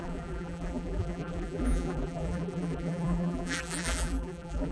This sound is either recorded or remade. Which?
remade